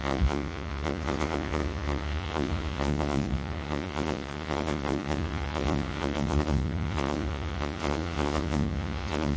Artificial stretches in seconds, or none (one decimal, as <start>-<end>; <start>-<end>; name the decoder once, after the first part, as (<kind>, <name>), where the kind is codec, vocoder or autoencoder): 0.0-9.4 (vocoder, Vocos)